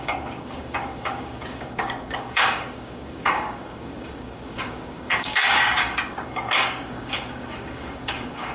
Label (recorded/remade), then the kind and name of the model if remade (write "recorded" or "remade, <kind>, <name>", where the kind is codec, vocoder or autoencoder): remade, codec, DAC